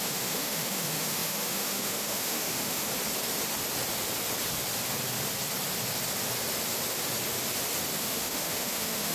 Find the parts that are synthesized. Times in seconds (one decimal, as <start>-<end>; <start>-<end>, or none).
0.0-2.9; 8.0-9.1